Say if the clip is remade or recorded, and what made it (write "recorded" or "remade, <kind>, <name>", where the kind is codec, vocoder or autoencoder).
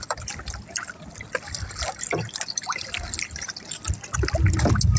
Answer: recorded